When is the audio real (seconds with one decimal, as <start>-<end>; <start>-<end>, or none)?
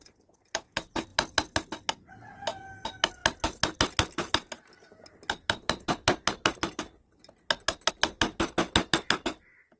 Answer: 0.0-9.8